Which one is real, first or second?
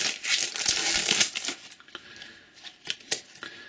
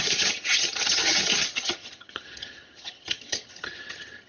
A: first